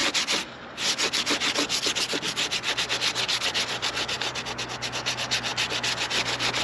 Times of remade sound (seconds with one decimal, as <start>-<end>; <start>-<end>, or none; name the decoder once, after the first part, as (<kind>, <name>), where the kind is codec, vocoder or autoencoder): none